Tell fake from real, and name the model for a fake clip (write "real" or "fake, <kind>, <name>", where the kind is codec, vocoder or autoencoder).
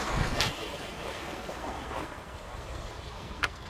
fake, codec, SNAC